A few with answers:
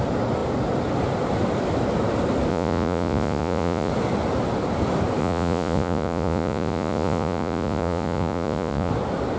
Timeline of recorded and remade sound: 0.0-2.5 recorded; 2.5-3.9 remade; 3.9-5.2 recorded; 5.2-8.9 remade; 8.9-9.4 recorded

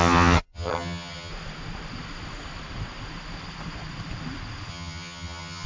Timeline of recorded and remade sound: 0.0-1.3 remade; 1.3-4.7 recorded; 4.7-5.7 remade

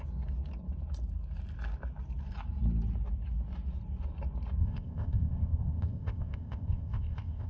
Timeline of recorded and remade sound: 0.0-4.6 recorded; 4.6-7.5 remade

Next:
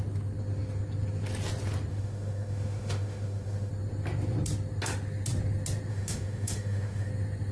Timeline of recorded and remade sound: 0.0-1.9 recorded; 1.9-3.7 remade; 3.7-5.9 recorded; 5.9-7.1 remade; 7.1-7.5 recorded